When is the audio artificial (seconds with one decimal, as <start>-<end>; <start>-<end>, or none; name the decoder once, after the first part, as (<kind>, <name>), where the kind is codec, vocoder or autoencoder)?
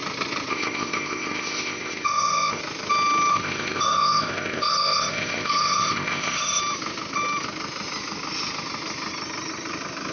0.5-2.6 (codec, ZipCodec); 3.3-6.6